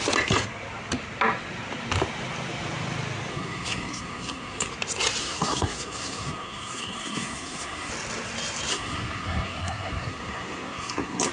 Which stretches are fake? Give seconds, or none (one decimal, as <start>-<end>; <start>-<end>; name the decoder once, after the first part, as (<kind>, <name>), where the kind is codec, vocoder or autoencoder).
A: 3.3-4.7 (codec, SNAC); 5.2-7.9; 8.7-11.3